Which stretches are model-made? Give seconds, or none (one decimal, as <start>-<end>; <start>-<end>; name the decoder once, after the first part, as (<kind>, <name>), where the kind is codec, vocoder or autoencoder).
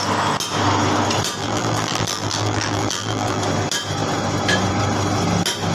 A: 1.4-3.4 (vocoder, BigVGAN v2)